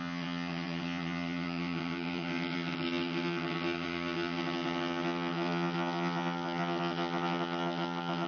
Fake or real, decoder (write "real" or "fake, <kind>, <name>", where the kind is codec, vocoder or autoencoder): fake, vocoder, HiFi-GAN